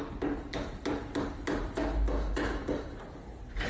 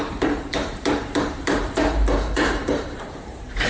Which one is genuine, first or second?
first